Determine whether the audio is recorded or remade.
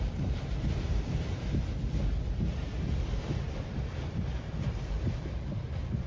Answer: remade